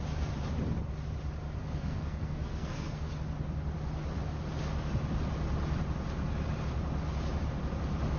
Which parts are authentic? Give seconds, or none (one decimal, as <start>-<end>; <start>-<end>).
0.0-1.6; 3.1-8.2